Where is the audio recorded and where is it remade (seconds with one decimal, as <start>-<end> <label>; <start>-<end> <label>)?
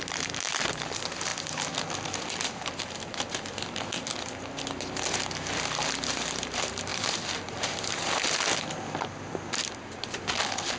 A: 0.0-10.8 recorded